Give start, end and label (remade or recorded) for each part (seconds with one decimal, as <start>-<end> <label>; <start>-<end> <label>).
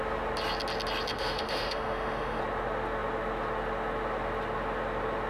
0.0-1.1 recorded; 1.1-2.4 remade; 2.4-5.3 recorded